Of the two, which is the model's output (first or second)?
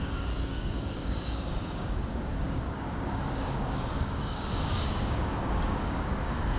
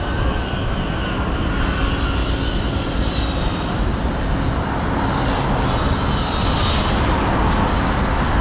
first